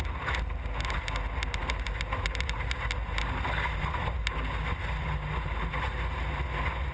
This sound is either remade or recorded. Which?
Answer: recorded